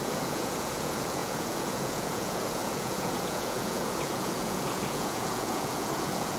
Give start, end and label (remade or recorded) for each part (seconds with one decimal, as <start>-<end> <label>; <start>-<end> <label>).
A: 0.0-6.4 remade